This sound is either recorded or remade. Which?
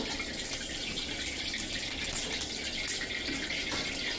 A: recorded